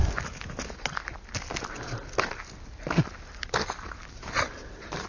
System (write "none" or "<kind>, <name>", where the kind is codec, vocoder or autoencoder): none